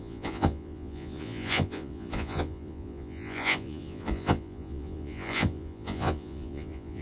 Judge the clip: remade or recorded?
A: remade